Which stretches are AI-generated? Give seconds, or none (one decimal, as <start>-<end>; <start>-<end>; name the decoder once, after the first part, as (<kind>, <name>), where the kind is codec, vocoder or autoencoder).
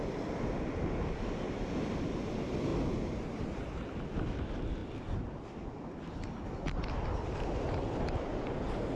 none